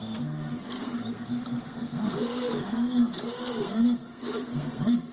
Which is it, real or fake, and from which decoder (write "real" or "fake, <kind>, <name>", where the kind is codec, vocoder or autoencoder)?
fake, codec, SNAC